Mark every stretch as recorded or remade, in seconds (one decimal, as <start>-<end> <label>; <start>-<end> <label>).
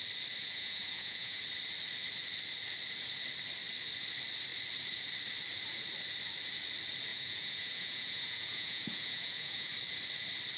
0.0-0.4 recorded; 0.4-1.4 remade; 1.4-7.1 recorded; 7.1-9.7 remade; 9.7-10.6 recorded